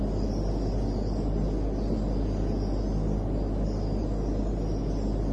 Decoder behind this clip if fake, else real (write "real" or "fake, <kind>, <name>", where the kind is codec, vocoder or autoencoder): real